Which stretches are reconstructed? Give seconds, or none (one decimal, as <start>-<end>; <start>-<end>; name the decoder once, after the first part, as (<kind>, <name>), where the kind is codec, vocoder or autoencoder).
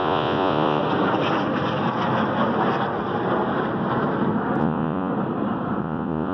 0.0-0.8 (vocoder, Vocos); 4.6-5.1; 5.8-6.3